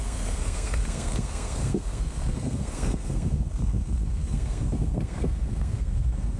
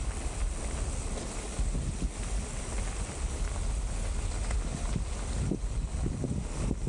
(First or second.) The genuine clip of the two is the second